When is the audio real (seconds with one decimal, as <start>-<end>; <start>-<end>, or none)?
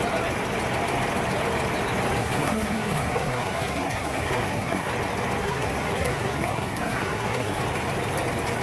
0.0-2.2; 4.9-5.4; 7.6-8.6